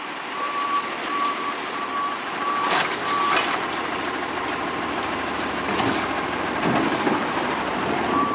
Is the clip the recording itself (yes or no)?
no